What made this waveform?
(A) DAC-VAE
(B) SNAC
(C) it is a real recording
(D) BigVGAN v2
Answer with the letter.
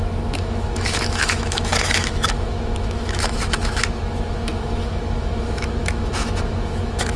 A